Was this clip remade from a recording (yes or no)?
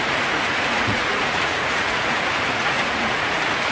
yes